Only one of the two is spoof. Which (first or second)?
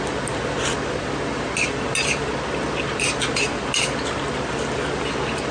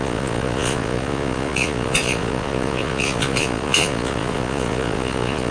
second